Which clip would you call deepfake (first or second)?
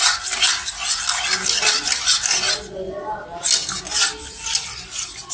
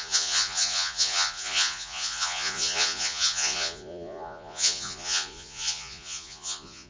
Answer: second